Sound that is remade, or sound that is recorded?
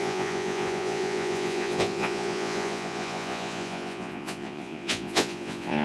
remade